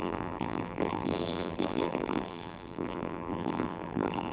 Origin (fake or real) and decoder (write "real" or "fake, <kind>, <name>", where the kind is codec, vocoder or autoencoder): fake, vocoder, BigVGAN v2